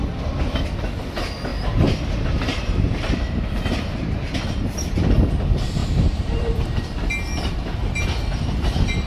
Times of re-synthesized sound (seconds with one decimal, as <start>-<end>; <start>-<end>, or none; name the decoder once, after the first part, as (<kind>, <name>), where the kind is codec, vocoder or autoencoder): 1.5-4.4 (vocoder, BigVGAN v2); 5.8-6.8; 7.8-9.1